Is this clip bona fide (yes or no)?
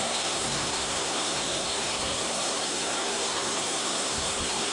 no